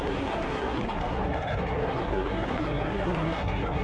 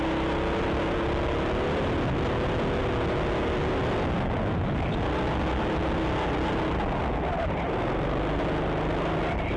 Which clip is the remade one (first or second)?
first